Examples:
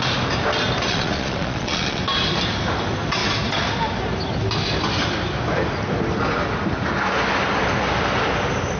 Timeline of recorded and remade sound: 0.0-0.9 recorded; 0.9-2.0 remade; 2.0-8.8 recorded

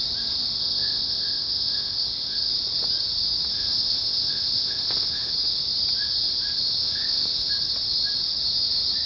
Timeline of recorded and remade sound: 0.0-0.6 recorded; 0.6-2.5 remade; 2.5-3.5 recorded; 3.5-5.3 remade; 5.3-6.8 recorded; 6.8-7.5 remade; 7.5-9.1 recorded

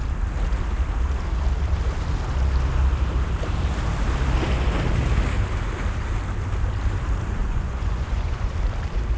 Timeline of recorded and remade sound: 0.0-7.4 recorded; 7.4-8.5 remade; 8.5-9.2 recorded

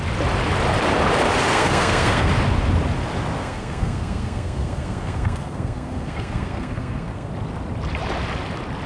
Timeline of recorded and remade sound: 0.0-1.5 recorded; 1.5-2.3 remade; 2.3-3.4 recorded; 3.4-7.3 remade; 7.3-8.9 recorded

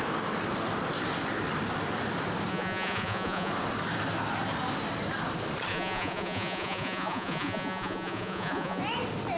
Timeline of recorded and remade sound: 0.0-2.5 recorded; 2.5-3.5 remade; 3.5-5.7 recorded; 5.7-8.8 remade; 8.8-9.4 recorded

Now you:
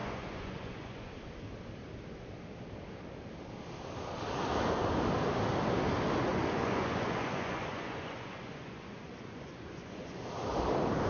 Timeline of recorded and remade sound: 0.0-1.1 remade; 1.1-6.3 recorded; 6.3-10.2 remade; 10.2-11.1 recorded